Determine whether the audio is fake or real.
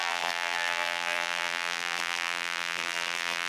fake